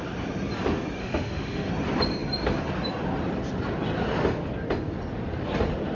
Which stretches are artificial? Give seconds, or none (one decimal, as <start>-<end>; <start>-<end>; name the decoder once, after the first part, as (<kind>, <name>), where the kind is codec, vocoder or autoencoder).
1.0-1.7 (autoencoder, DAC-VAE)